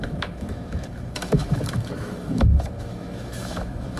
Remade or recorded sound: remade